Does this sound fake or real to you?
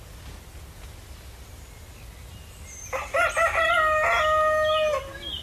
real